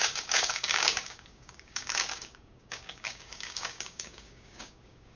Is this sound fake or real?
fake